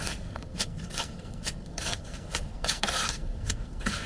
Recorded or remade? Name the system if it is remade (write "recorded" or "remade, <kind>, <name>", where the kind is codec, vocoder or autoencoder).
remade, codec, SNAC